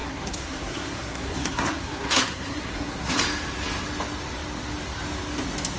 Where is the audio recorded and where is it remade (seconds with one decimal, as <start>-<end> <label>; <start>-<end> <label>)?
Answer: 0.0-3.1 remade; 3.1-5.8 recorded

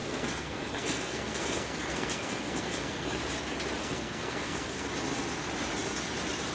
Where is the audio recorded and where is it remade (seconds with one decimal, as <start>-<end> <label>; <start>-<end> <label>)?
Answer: 0.0-3.2 remade; 3.2-3.8 recorded; 3.8-4.9 remade; 4.9-6.5 recorded